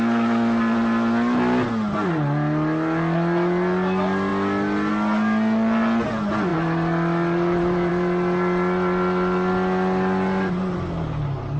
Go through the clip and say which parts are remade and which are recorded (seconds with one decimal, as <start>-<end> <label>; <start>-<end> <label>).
0.0-11.6 recorded